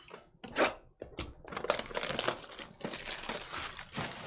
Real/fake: real